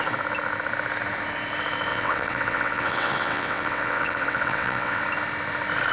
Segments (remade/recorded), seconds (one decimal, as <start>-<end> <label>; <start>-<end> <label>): 0.0-1.9 recorded; 1.9-5.0 remade; 5.0-5.9 recorded